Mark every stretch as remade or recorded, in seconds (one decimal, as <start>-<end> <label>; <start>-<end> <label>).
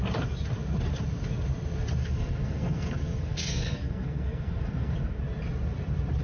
0.0-2.0 recorded; 2.0-5.2 remade; 5.2-6.2 recorded